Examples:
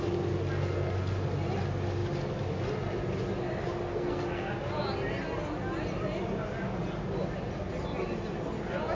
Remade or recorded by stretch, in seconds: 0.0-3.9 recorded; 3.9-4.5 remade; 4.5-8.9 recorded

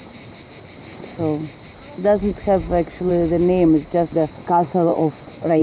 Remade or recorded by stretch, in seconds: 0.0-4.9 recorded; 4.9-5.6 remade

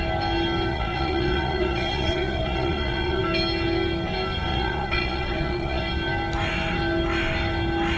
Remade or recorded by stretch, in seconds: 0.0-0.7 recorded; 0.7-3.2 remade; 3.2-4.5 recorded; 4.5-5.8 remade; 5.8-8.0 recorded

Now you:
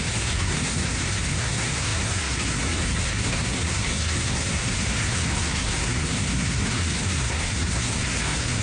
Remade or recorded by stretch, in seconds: 0.0-8.6 remade

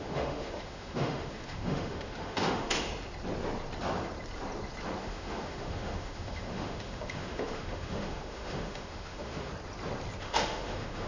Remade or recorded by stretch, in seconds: 0.0-2.9 remade; 2.9-5.0 recorded; 5.0-9.5 remade; 9.5-10.2 recorded; 10.2-11.1 remade

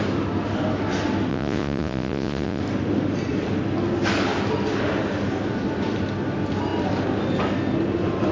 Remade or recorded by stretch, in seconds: 0.0-1.3 recorded; 1.3-2.6 remade; 2.6-8.3 recorded

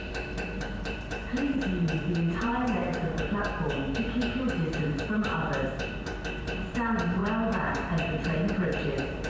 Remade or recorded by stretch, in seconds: 0.0-5.3 remade; 5.3-6.4 recorded; 6.4-7.2 remade; 7.2-8.5 recorded; 8.5-9.3 remade